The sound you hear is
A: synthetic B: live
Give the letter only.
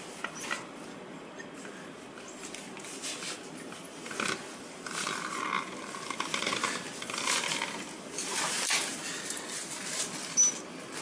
B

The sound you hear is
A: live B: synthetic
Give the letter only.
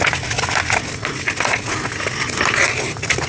A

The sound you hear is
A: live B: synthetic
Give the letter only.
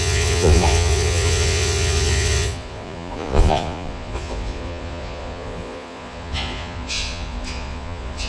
B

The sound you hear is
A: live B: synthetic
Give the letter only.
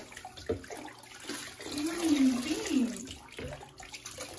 A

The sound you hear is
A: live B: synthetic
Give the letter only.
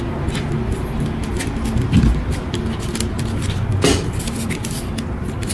A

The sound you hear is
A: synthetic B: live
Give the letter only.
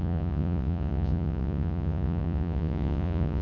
A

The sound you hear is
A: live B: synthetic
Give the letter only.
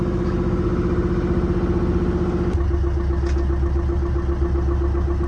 A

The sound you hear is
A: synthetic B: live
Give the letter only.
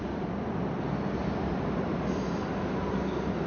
B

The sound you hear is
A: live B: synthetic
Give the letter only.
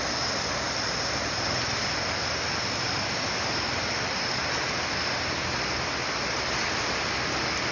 A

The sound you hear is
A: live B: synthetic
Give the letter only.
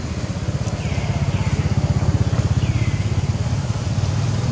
A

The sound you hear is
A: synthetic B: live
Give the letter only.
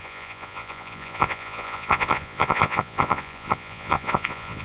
A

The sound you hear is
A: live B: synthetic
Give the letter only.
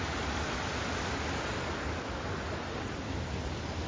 A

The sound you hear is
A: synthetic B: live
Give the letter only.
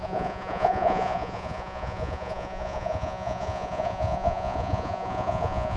A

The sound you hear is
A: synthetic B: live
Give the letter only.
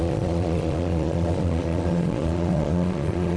A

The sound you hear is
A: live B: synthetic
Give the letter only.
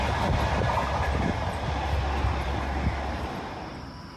A